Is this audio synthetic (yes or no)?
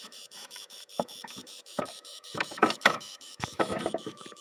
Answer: yes